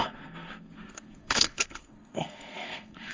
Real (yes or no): no